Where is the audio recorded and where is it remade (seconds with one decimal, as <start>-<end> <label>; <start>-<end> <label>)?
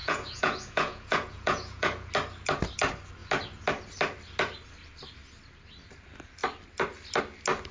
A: 0.0-2.1 remade; 2.1-7.7 recorded